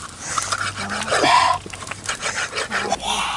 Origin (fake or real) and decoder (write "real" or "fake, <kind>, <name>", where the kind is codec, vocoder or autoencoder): real